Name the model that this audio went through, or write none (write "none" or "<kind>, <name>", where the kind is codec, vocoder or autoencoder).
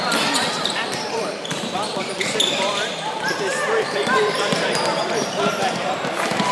vocoder, BigVGAN v2